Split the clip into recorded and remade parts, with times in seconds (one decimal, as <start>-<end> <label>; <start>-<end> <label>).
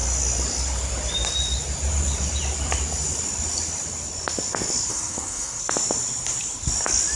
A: 0.0-4.9 recorded; 4.9-5.6 remade; 5.6-7.2 recorded